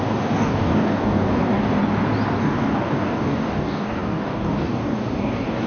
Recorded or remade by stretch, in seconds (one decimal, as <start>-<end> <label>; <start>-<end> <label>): 0.0-1.8 remade; 1.8-2.4 recorded; 2.4-5.7 remade